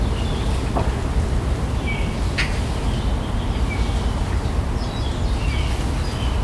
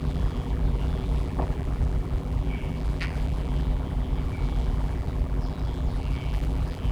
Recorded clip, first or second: first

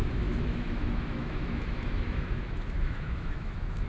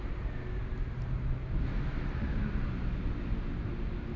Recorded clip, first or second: second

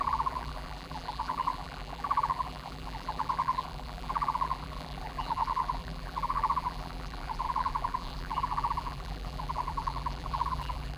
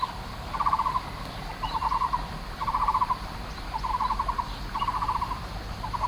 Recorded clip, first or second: second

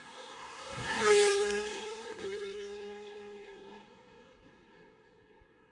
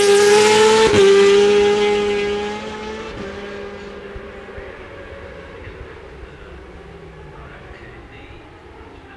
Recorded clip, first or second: second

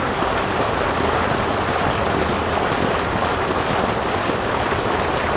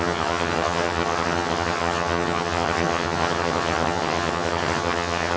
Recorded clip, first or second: first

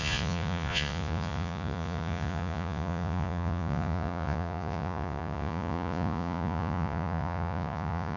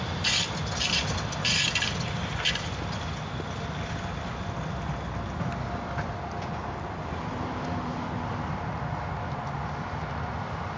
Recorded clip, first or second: second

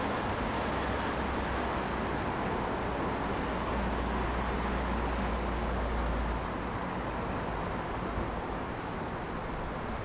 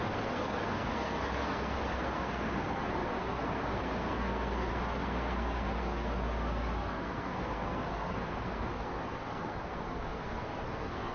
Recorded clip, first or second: first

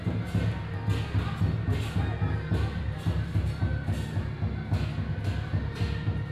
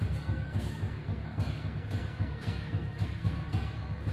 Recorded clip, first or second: first